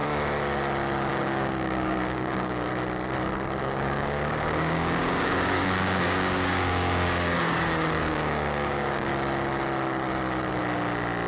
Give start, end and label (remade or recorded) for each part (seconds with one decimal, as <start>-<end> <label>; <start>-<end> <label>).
0.0-1.1 recorded; 1.1-2.7 remade; 2.7-3.6 recorded; 3.6-9.1 remade; 9.1-11.3 recorded